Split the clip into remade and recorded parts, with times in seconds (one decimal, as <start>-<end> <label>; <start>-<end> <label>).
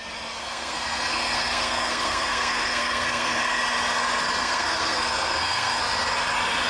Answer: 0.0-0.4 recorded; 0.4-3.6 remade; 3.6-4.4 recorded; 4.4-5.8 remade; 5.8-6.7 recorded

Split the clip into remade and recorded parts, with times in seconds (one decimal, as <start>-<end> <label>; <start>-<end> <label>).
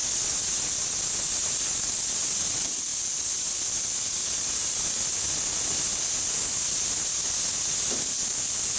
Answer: 0.0-8.8 recorded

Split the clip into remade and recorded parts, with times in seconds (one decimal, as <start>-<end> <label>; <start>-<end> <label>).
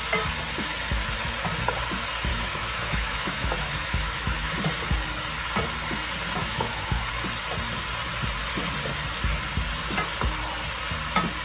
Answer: 0.0-2.3 recorded; 2.3-4.5 remade; 4.5-6.4 recorded; 6.4-7.0 remade; 7.0-11.4 recorded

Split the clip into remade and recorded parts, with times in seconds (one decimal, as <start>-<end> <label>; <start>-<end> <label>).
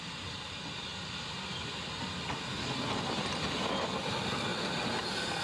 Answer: 0.0-5.4 recorded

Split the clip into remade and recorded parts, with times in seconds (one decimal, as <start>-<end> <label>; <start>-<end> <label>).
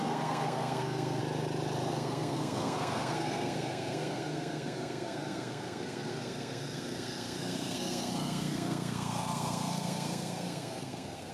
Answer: 0.0-1.2 remade; 1.2-1.9 recorded; 1.9-11.3 remade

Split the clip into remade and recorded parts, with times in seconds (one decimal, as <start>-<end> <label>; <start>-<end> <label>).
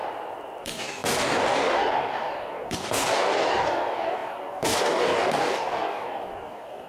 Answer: 0.0-0.6 recorded; 0.6-6.9 remade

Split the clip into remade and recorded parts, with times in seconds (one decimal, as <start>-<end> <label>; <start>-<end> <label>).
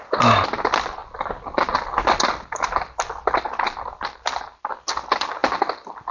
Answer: 0.0-6.1 recorded